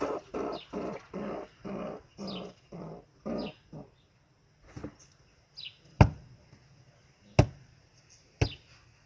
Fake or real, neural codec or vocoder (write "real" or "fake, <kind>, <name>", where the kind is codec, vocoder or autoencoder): real